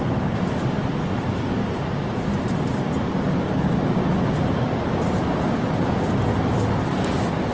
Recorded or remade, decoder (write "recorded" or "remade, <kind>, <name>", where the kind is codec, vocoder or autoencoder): recorded